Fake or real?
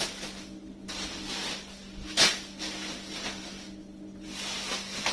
real